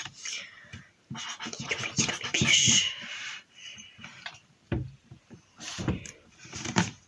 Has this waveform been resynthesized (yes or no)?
yes